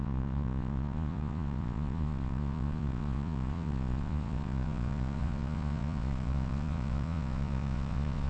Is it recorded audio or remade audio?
remade